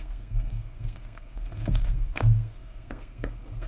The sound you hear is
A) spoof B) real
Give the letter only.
A